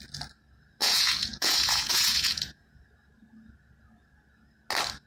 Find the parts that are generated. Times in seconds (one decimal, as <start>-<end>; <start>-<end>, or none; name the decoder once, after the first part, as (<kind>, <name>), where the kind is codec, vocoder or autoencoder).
0.8-2.8 (vocoder, Vocos)